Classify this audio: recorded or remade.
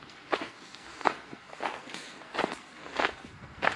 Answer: remade